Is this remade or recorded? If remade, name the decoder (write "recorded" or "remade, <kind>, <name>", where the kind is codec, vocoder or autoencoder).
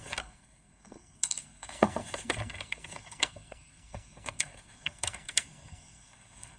remade, codec, SNAC